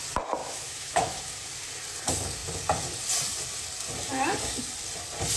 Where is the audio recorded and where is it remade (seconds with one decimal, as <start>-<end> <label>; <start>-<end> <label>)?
0.0-0.4 recorded; 0.4-1.4 remade; 1.4-5.4 recorded

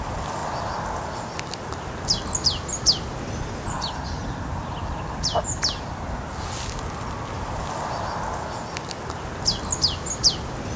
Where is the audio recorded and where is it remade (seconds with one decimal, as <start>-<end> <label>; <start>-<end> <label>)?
0.0-10.8 recorded

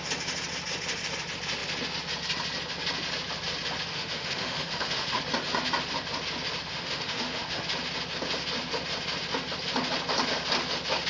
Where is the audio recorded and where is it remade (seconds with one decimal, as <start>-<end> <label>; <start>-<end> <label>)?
0.0-3.9 recorded; 3.9-5.2 remade; 5.2-6.7 recorded; 6.7-7.6 remade; 7.6-11.1 recorded

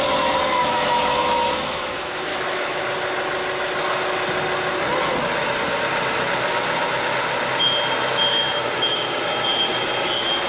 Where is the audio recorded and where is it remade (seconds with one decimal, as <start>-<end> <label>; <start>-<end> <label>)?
0.0-0.6 recorded; 0.6-2.8 remade; 2.8-10.5 recorded

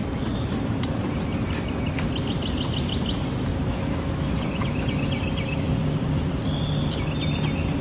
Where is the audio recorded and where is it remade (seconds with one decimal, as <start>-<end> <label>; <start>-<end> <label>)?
0.0-3.5 recorded; 3.5-4.3 remade; 4.3-7.8 recorded

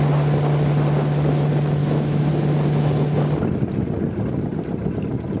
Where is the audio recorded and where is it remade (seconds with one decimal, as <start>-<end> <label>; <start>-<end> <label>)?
0.0-1.8 recorded; 1.8-2.3 remade; 2.3-5.4 recorded

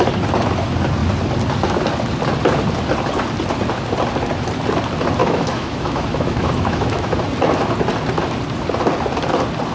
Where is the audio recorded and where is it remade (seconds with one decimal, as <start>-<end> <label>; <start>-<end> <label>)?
0.0-5.2 recorded; 5.2-7.1 remade; 7.1-9.7 recorded